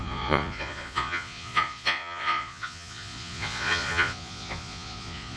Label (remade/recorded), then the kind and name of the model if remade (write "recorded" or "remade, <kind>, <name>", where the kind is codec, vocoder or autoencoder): remade, vocoder, Vocos